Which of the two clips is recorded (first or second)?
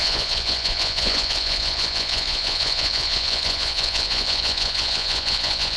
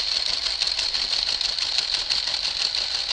second